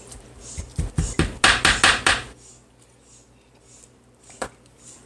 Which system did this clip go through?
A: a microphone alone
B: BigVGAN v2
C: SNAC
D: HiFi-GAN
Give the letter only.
A